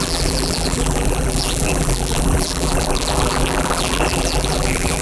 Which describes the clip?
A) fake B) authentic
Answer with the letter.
A